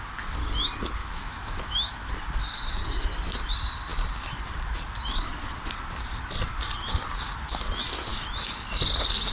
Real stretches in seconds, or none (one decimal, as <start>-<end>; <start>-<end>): 0.0-1.0; 2.1-9.3